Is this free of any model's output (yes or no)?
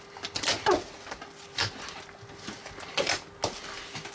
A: yes